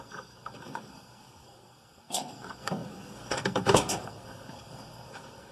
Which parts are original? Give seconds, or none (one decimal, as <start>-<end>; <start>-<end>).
none